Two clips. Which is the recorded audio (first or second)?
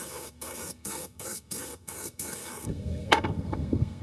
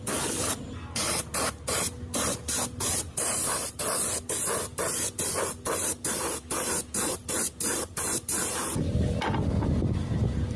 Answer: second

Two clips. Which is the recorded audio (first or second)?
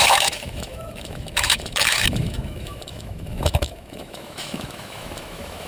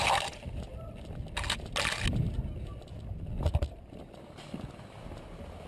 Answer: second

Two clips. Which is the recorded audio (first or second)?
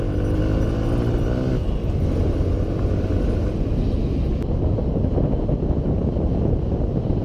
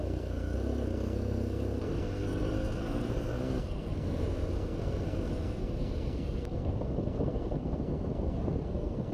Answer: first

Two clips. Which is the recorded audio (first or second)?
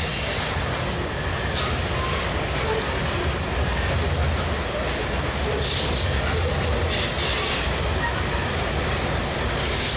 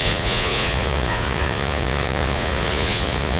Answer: first